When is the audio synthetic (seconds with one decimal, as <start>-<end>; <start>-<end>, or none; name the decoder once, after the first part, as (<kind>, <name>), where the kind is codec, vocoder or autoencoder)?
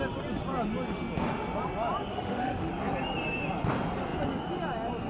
2.1-2.7 (autoencoder, DAC-VAE)